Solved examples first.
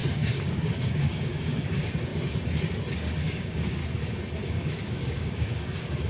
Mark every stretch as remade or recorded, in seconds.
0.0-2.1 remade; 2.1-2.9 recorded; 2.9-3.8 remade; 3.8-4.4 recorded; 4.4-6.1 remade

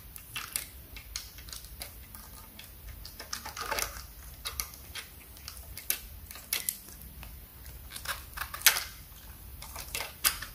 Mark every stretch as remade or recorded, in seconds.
0.0-9.5 recorded; 9.5-10.5 remade

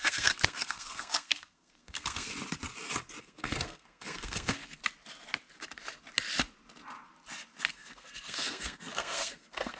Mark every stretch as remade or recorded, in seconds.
0.0-2.3 remade; 2.3-3.2 recorded; 3.2-4.8 remade; 4.8-7.7 recorded; 7.7-9.8 remade

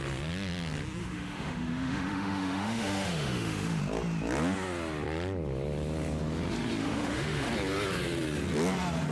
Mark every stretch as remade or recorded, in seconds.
0.0-1.0 recorded; 1.0-3.8 remade; 3.8-6.8 recorded; 6.8-7.5 remade; 7.5-9.1 recorded

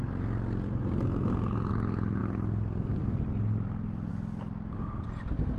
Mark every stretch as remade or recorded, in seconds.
0.0-5.6 recorded

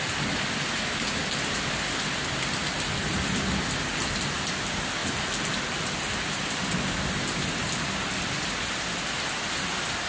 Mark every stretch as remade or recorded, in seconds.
0.0-10.1 recorded

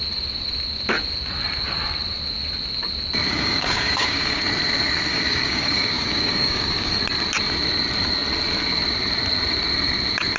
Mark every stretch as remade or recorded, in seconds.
0.0-3.3 recorded; 3.3-4.4 remade; 4.4-5.1 recorded; 5.1-7.0 remade; 7.0-10.4 recorded

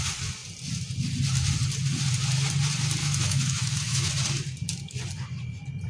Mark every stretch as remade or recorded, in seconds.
0.0-3.0 recorded; 3.0-4.1 remade; 4.1-5.9 recorded